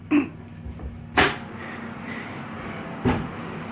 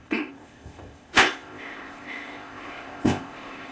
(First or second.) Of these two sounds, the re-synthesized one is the second